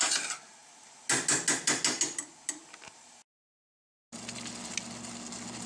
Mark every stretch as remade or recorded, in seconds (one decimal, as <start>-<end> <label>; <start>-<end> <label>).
0.0-5.7 recorded